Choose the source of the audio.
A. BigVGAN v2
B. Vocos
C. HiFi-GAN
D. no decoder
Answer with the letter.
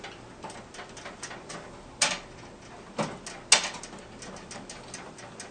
D